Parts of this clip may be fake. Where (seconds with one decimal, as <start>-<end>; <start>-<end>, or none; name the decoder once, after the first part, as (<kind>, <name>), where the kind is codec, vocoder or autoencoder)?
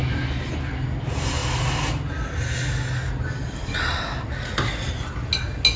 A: none